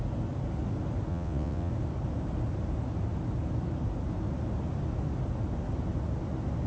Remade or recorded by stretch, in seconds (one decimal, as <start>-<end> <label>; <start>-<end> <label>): 0.0-1.1 recorded; 1.1-1.7 remade; 1.7-6.7 recorded

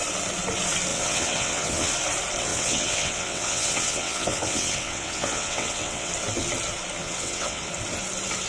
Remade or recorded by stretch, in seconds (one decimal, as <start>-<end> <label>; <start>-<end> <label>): 0.0-0.9 recorded; 0.9-1.9 remade; 1.9-2.5 recorded; 2.5-6.1 remade; 6.1-7.0 recorded; 7.0-7.7 remade; 7.7-8.5 recorded